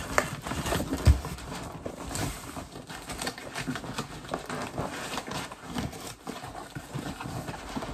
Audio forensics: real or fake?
real